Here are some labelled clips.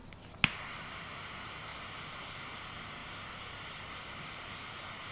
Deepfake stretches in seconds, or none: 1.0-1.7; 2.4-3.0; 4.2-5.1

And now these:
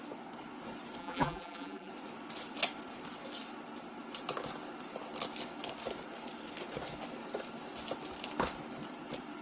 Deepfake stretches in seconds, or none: 1.0-1.9

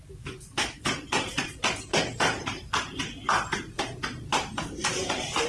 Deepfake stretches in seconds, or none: 0.8-5.5

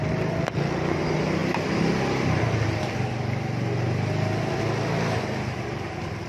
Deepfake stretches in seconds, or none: none

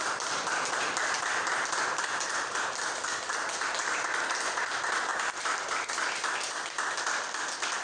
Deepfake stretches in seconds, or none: 5.1-6.1

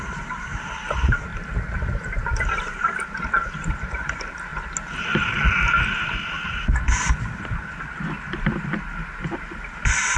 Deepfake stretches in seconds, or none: 0.0-4.5; 9.2-10.2

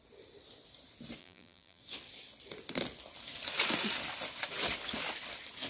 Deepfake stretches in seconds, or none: 1.2-1.8